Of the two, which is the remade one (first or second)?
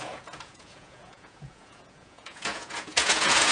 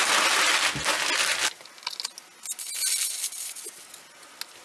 first